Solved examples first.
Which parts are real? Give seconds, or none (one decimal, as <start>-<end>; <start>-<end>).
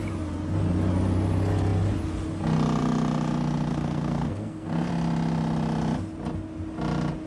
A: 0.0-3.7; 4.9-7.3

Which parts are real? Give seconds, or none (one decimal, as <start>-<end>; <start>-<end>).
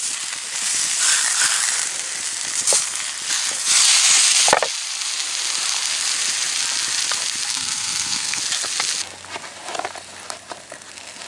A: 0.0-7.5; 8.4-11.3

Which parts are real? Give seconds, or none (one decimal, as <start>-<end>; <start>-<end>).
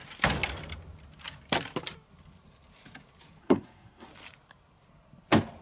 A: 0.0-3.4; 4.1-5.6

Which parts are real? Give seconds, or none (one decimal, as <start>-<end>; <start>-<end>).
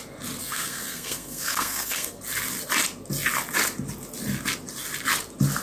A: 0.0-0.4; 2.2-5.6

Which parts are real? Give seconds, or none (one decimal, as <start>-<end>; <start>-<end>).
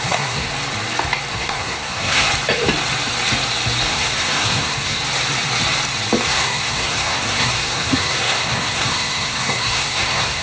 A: 0.5-1.3; 2.3-3.9; 5.0-6.3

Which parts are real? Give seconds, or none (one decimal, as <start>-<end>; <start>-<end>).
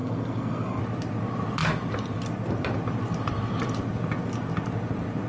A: 0.8-5.3